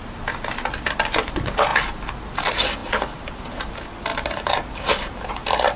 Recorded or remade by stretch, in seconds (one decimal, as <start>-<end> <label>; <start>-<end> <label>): 0.0-4.1 recorded; 4.1-5.3 remade; 5.3-5.8 recorded